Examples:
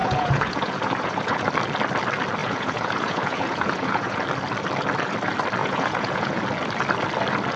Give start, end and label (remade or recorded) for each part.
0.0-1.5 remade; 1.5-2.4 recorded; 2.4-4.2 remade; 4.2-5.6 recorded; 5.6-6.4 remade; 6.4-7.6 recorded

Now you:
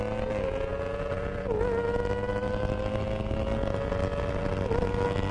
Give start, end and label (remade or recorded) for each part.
0.0-5.3 recorded

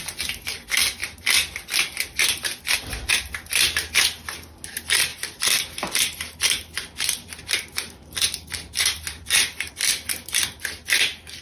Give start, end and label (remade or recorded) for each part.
0.0-1.0 recorded; 1.0-3.1 remade; 3.1-5.1 recorded; 5.1-9.7 remade; 9.7-11.4 recorded

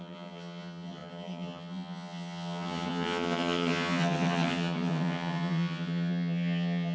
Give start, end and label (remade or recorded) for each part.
0.0-6.9 remade

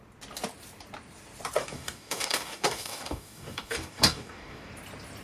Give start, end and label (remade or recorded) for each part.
0.0-1.6 recorded; 1.6-4.7 remade; 4.7-5.2 recorded

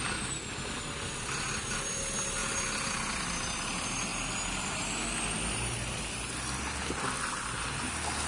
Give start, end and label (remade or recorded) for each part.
0.0-8.3 recorded

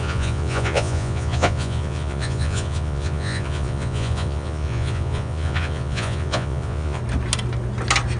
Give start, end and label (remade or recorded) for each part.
0.0-7.0 remade; 7.0-8.2 recorded